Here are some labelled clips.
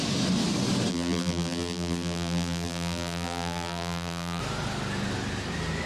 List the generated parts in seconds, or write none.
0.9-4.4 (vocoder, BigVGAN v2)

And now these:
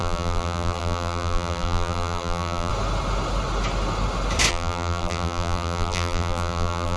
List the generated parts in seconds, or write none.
0.0-2.7 (vocoder, BigVGAN v2); 4.5-7.0